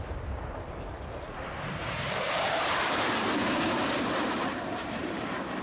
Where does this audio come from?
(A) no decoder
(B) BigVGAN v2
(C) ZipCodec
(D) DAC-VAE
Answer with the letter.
B